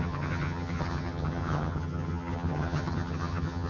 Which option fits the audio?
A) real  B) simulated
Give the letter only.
B